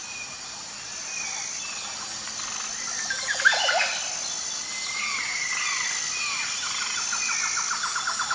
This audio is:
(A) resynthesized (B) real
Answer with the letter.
B